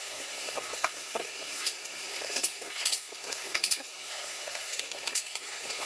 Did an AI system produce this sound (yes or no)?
yes